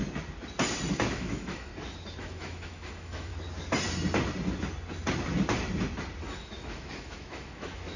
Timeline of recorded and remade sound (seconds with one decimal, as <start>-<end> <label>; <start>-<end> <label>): 0.0-0.9 recorded; 0.9-1.7 remade; 1.7-2.2 recorded; 2.2-3.3 remade; 3.3-6.2 recorded; 6.2-8.0 remade